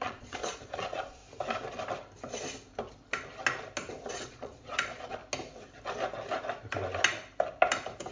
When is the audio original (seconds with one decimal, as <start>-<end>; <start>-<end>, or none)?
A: 1.2-4.1; 5.2-8.1